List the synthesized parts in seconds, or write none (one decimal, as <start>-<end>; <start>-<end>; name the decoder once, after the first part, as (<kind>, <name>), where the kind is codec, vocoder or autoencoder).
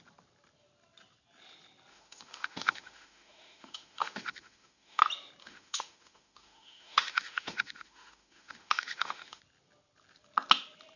1.9-5.0 (autoencoder, DAC-VAE); 5.4-9.4